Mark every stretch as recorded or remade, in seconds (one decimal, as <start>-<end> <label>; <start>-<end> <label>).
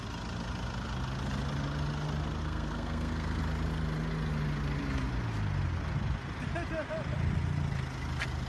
0.0-2.4 recorded; 2.4-3.4 remade; 3.4-8.5 recorded